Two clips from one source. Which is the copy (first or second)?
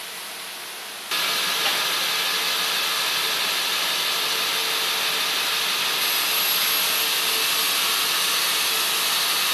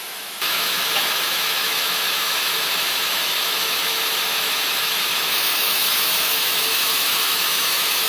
second